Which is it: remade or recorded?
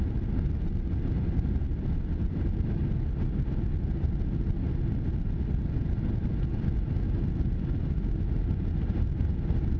recorded